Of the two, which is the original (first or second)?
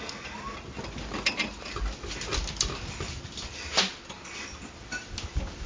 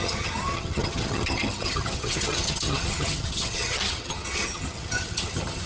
first